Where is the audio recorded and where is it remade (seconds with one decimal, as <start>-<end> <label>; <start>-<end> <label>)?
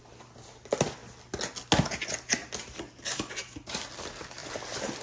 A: 0.0-4.4 recorded; 4.4-5.0 remade